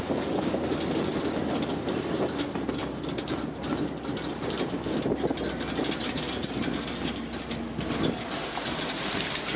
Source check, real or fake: real